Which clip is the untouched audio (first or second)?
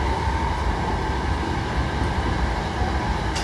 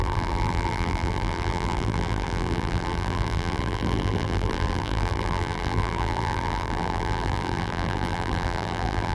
first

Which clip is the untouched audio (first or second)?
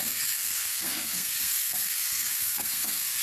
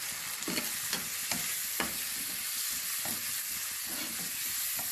second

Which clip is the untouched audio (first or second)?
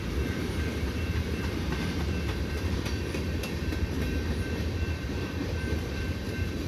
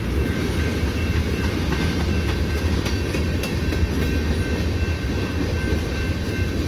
second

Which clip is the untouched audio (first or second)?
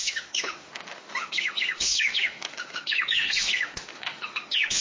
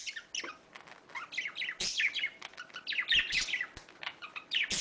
second